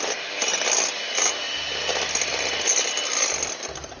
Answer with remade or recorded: recorded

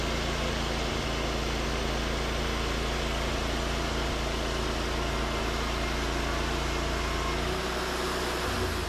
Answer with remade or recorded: recorded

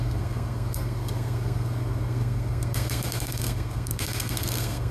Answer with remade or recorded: remade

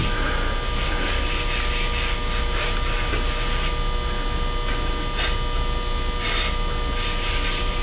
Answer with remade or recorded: recorded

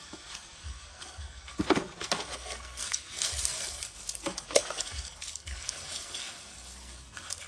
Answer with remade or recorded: remade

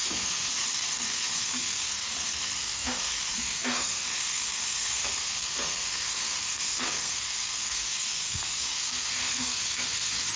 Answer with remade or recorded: remade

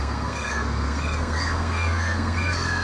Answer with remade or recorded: remade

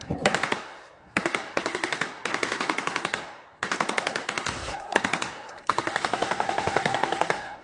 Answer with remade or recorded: remade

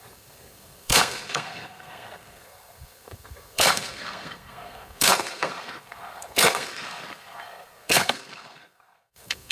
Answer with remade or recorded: remade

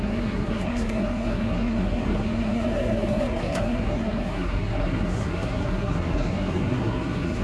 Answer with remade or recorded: remade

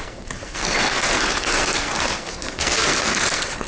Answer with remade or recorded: remade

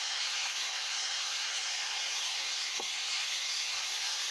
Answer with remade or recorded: remade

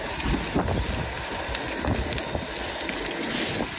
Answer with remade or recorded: recorded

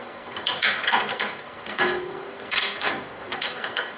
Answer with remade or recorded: remade